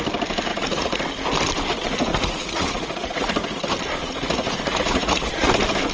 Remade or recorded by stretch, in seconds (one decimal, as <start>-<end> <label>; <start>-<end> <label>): 0.0-0.5 recorded; 0.5-1.0 remade; 1.0-2.1 recorded; 2.1-3.3 remade; 3.3-4.0 recorded; 4.0-5.5 remade; 5.5-5.9 recorded